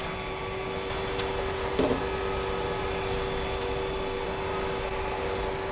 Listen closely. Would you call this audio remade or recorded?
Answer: recorded